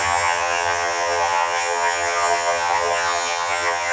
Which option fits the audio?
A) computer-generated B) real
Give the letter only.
A